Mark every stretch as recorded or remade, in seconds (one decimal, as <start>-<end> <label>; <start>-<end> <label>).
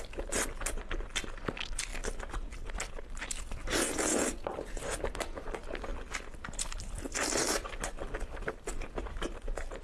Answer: 0.0-5.9 recorded; 5.9-6.9 remade; 6.9-9.8 recorded